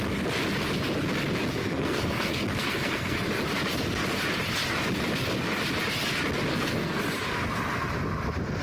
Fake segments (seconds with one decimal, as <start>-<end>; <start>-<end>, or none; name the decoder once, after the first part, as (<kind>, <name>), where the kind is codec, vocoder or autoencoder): 1.6-3.2 (codec, SNAC); 6.5-7.0